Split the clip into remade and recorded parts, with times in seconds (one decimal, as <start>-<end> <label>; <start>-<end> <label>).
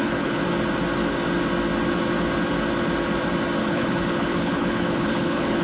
0.0-0.4 remade; 0.4-3.6 recorded; 3.6-5.6 remade